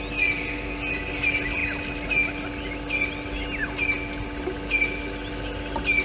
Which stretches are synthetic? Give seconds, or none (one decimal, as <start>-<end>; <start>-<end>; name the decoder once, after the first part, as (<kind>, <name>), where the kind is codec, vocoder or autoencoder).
none